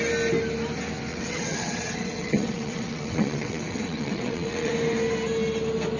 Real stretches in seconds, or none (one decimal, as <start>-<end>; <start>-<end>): 0.0-1.1; 4.7-6.0